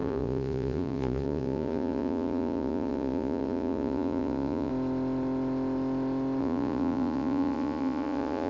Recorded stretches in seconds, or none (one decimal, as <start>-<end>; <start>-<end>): 4.7-6.4